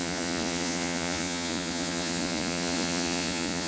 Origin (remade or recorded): remade